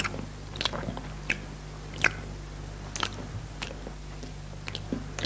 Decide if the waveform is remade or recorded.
recorded